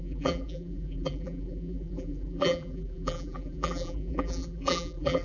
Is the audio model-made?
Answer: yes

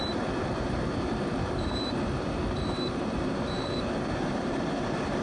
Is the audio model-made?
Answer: yes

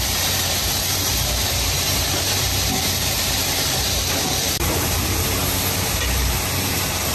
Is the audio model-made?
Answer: yes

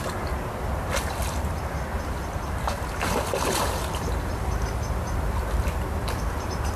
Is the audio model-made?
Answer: yes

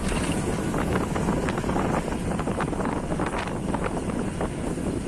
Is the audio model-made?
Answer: no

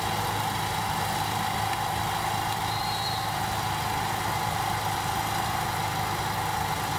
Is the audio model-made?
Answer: no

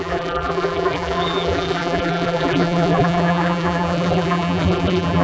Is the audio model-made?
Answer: yes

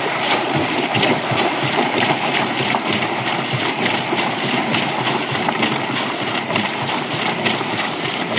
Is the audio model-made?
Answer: yes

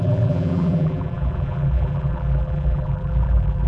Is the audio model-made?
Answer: yes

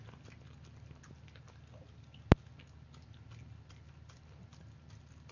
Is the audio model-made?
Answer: no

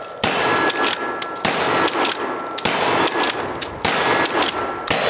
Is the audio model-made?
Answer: no